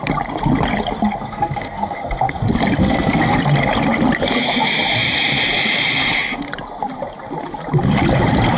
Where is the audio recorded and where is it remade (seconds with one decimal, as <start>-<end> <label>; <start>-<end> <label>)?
0.0-1.2 recorded; 1.2-2.4 remade; 2.4-2.8 recorded; 2.8-3.4 remade; 3.4-8.6 recorded